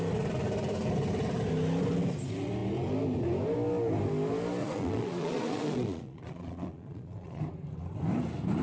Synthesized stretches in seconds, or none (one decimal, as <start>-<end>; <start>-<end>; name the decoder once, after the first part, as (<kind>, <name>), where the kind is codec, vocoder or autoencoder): 4.6-7.4 (vocoder, Vocos)